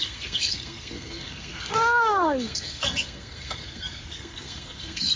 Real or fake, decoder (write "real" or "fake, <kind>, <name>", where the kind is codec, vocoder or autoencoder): fake, codec, SNAC